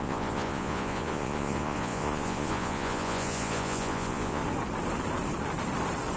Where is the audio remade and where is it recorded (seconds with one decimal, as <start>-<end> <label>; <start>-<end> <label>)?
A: 0.0-4.4 remade; 4.4-6.2 recorded